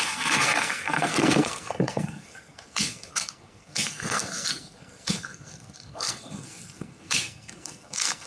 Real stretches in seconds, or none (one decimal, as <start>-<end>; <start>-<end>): none